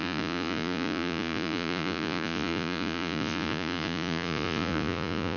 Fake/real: fake